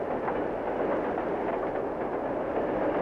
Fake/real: real